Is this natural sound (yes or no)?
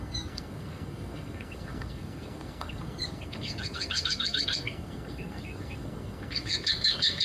no